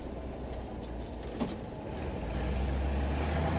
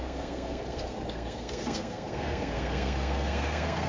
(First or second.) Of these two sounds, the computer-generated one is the second